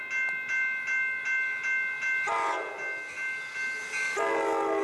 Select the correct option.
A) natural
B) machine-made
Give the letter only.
A